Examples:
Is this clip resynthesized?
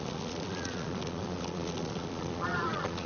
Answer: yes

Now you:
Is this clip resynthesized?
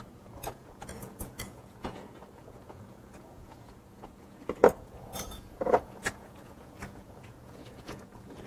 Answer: yes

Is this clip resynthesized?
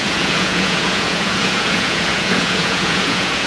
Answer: yes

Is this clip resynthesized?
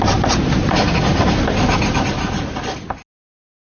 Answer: no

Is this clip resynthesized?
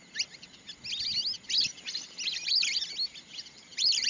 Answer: no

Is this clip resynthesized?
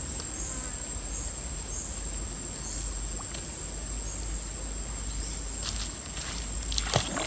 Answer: no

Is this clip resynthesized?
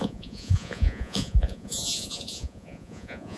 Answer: yes